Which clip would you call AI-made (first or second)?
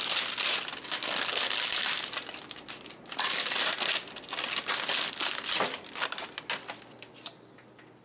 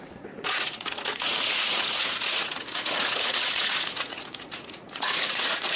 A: second